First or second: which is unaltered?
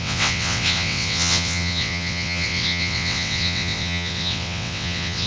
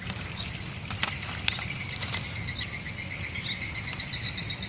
second